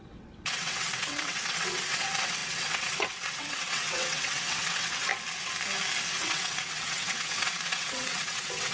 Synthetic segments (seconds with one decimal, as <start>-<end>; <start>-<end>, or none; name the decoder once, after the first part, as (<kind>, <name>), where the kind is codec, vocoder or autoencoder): 0.0-5.1 (vocoder, WaveNeXt); 6.1-8.7